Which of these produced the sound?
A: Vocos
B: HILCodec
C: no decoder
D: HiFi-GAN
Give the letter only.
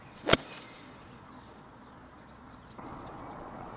A